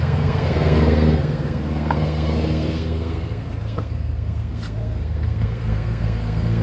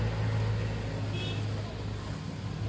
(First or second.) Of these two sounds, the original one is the second